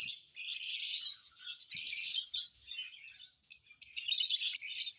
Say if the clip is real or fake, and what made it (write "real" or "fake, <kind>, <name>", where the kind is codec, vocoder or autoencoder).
real